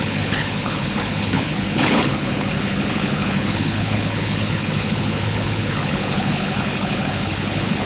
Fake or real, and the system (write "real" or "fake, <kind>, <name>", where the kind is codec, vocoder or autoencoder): fake, codec, HILCodec